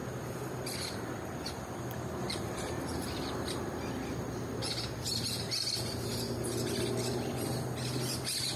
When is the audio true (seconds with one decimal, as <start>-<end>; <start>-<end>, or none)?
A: 3.6-8.6